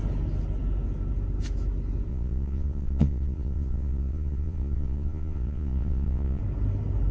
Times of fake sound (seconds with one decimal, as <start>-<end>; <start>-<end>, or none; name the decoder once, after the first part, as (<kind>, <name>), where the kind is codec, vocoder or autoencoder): 2.1-6.4 (vocoder, Vocos)